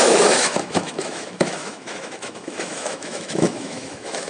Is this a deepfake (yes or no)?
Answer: yes